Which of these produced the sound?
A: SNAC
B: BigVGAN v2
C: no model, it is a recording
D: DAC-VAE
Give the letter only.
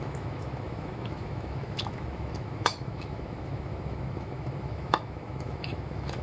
D